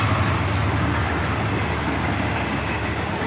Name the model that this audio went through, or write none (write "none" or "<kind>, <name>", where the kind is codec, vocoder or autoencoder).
none